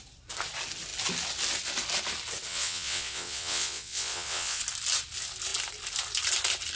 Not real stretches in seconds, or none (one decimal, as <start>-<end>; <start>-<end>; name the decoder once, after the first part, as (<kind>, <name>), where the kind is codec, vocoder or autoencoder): 2.5-4.6 (vocoder, WaveNeXt)